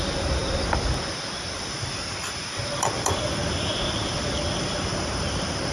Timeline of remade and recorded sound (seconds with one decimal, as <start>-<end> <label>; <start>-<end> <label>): 0.0-0.4 remade; 0.4-1.5 recorded; 1.5-5.7 remade